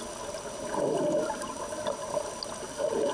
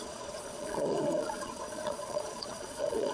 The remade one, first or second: second